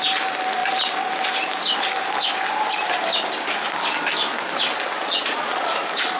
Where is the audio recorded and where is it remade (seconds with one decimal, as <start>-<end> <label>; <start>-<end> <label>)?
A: 0.0-5.0 recorded; 5.0-5.7 remade; 5.7-6.2 recorded